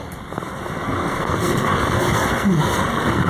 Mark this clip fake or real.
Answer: fake